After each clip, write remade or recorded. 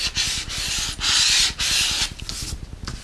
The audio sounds recorded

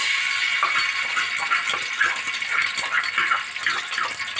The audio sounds recorded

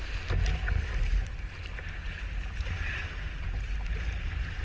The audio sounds recorded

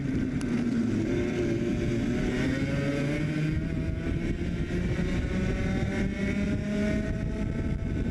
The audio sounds recorded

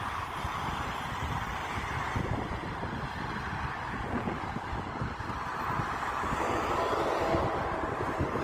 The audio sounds recorded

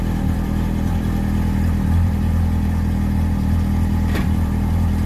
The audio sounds remade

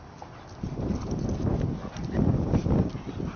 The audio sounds recorded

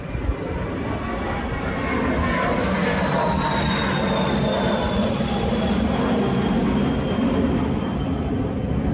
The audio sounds recorded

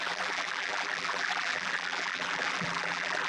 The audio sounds remade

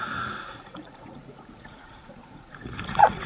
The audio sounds remade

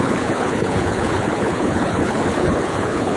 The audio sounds remade